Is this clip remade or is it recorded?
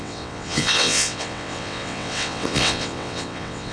remade